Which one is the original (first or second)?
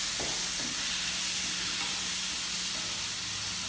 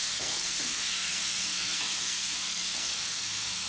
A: first